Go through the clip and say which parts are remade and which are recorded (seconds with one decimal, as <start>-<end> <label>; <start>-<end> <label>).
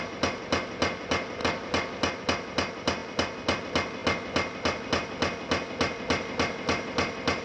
0.0-7.4 recorded